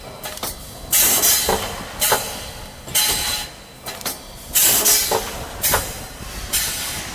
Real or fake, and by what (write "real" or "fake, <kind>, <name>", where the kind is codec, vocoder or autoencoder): real